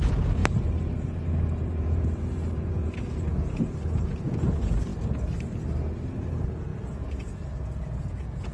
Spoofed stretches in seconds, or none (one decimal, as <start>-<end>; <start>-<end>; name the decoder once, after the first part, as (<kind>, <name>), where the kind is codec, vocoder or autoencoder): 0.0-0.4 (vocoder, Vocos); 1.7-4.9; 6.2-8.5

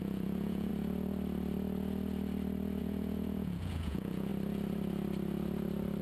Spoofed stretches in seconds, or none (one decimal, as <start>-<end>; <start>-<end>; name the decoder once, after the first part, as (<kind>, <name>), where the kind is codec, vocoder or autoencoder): 0.0-0.7 (vocoder, Vocos); 2.8-4.3

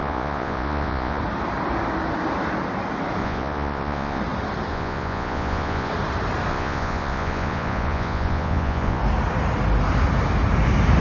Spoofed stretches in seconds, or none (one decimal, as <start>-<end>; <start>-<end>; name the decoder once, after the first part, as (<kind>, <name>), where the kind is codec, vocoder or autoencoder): 0.0-1.2 (vocoder, Vocos); 3.2-4.2; 4.7-5.9; 6.5-9.0